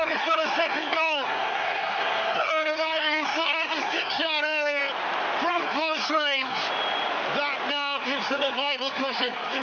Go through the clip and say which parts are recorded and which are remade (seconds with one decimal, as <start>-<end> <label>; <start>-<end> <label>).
0.0-4.8 remade; 4.8-5.5 recorded; 5.5-6.6 remade; 6.6-7.7 recorded; 7.7-9.6 remade